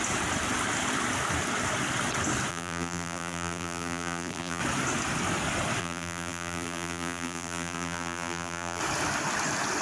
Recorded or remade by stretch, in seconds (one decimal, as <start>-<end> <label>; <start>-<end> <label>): 0.0-2.5 recorded; 2.5-4.6 remade; 4.6-5.8 recorded; 5.8-8.8 remade; 8.8-9.8 recorded

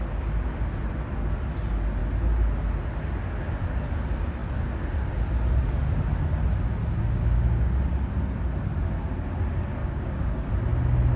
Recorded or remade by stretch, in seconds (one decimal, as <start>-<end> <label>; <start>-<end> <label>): 0.0-6.8 recorded; 6.8-8.2 remade; 8.2-9.8 recorded; 9.8-10.5 remade; 10.5-11.2 recorded

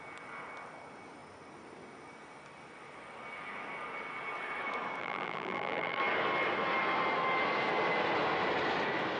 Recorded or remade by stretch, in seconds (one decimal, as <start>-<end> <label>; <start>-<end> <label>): 0.0-5.0 recorded; 5.0-6.0 remade; 6.0-9.2 recorded

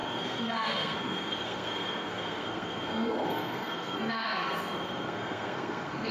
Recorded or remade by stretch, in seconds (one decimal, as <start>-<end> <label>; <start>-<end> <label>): 0.0-6.1 remade

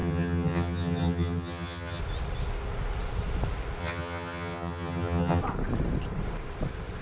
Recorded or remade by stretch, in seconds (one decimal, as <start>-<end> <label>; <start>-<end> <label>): 0.0-2.0 remade; 2.0-3.8 recorded; 3.8-5.4 remade; 5.4-7.0 recorded